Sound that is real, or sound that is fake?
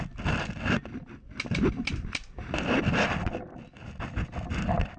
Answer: real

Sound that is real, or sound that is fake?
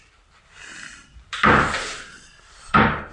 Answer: fake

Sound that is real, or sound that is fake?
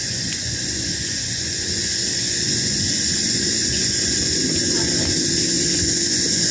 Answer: fake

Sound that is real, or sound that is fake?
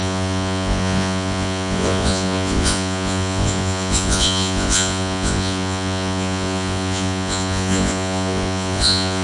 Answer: fake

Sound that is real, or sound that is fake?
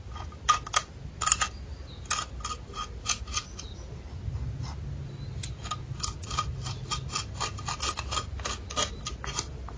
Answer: real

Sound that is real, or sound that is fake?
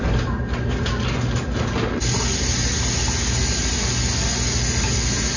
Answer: real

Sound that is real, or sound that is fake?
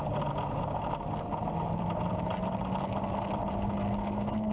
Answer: real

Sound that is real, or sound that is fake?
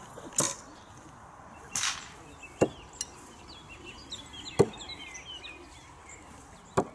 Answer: real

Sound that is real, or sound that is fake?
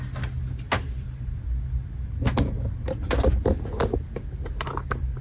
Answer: real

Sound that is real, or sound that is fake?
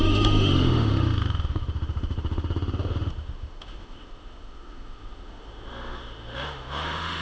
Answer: fake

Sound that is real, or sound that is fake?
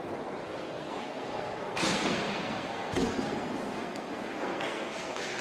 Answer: fake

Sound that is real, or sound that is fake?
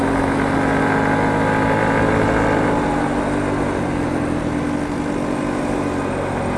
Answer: real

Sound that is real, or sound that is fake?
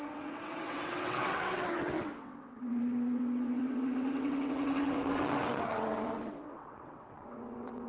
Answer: fake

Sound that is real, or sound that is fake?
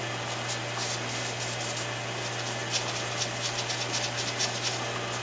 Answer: real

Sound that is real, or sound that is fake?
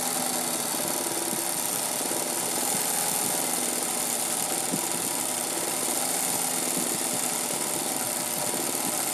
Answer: real